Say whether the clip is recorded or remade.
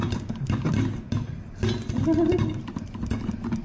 recorded